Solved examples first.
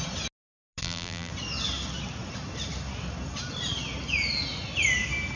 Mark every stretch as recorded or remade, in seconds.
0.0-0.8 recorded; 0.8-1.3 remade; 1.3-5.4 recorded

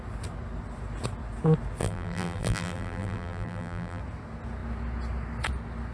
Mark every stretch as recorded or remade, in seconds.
0.0-1.8 recorded; 1.8-4.0 remade; 4.0-5.9 recorded

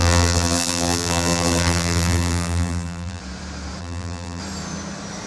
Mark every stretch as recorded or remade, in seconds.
0.0-3.2 remade; 3.2-3.8 recorded; 3.8-4.4 remade; 4.4-5.3 recorded

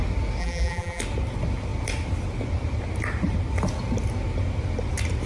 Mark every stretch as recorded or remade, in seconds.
0.0-0.4 recorded; 0.4-1.0 remade; 1.0-5.3 recorded

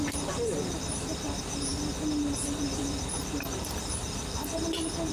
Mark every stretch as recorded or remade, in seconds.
0.0-5.1 recorded